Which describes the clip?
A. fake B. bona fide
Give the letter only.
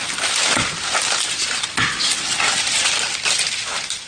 B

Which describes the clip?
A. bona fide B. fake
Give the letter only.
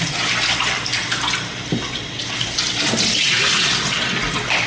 A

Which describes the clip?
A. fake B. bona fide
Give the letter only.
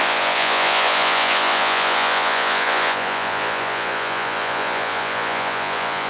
A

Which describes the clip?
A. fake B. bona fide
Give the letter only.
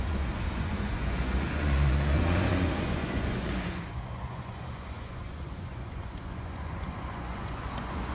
A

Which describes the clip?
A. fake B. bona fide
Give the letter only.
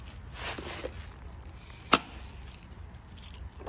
B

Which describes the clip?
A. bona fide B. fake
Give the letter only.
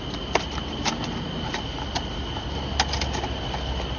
A